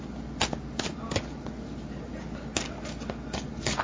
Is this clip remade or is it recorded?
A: recorded